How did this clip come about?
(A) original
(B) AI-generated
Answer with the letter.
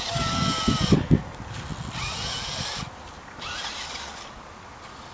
A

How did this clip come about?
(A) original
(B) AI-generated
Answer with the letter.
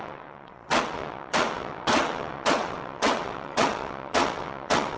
B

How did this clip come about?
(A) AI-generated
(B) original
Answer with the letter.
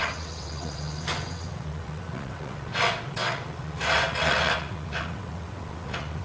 A